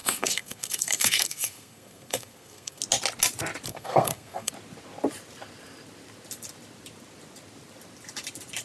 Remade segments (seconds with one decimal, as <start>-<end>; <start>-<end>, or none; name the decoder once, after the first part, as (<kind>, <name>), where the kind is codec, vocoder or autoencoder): 0.0-2.8 (codec, SNAC); 3.7-4.5